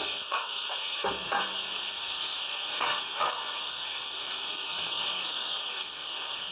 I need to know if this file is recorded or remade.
remade